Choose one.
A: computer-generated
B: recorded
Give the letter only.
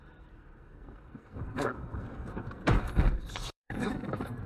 A